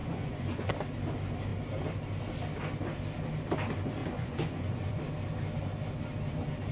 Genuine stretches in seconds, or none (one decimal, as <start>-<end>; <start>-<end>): 0.7-4.0; 5.0-6.7